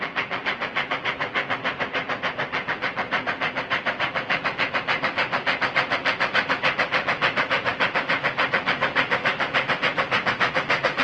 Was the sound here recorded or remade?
remade